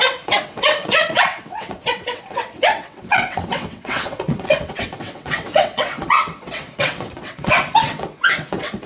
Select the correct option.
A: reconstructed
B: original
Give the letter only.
A